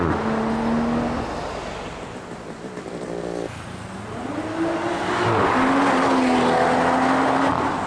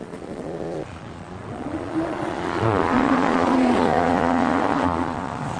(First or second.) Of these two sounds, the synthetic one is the second